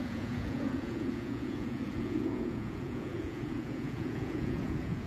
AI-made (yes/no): yes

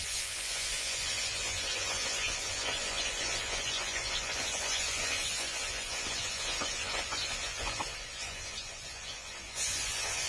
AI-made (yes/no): yes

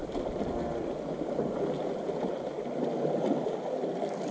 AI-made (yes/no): no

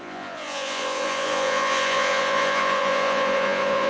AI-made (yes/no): yes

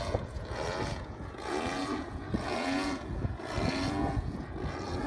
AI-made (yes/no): yes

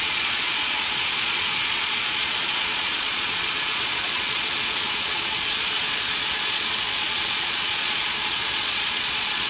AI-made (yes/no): yes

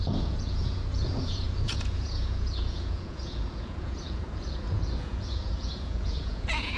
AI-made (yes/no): yes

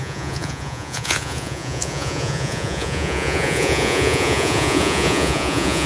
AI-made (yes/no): yes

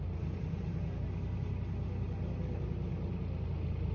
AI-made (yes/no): no